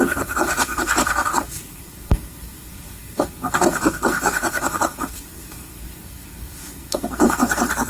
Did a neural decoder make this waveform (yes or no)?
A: yes